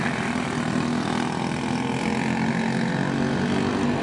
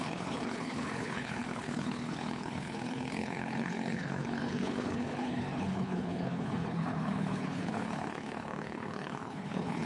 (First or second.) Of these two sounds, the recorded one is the first